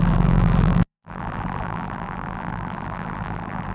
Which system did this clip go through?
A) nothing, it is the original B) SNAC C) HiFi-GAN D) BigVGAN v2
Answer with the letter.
D